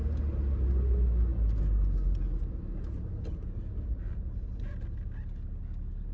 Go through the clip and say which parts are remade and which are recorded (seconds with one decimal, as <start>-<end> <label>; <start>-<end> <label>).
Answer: 0.0-6.1 recorded